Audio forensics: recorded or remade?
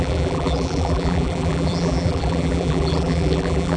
remade